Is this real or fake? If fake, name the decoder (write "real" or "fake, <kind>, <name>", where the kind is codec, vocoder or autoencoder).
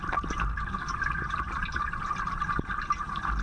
real